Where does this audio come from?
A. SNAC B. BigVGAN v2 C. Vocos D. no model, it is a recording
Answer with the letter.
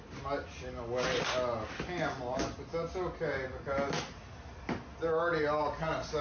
D